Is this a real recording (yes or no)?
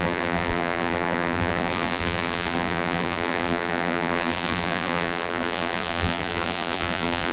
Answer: no